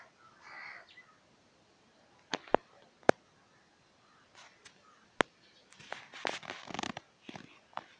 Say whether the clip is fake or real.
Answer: real